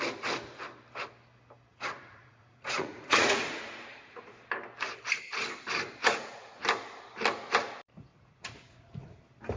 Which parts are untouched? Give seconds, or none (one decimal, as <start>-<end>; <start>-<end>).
0.0-1.7; 4.4-6.0; 6.6-8.1; 9.2-9.6